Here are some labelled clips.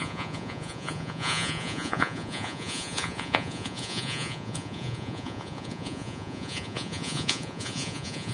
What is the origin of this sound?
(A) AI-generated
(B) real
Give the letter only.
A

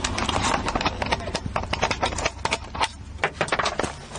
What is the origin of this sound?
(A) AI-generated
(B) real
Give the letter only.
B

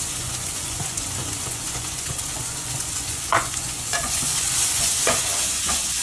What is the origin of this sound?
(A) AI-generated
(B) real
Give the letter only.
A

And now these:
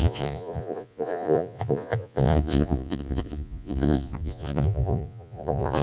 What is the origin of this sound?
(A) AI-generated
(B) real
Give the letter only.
A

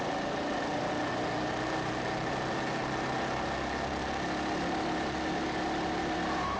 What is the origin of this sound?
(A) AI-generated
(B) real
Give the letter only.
B